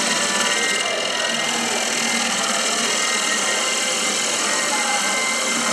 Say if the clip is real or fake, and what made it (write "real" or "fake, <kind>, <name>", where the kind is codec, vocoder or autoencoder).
real